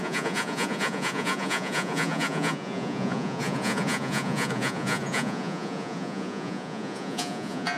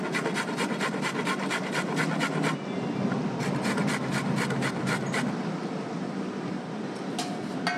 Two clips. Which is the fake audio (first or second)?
first